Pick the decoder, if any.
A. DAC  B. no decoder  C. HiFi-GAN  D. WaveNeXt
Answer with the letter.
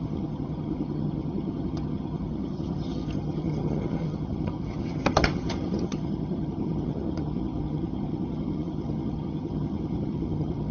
C